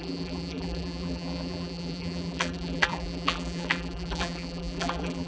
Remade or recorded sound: remade